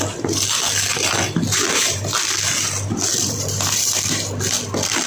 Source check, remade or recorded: remade